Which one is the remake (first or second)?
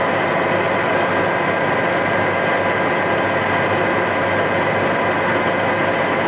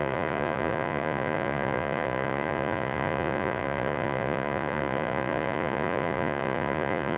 second